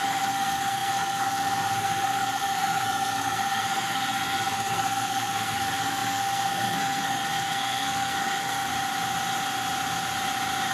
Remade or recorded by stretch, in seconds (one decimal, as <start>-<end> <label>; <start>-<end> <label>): 0.0-8.7 remade; 8.7-10.7 recorded